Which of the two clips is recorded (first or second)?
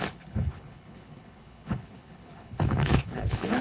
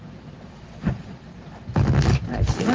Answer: second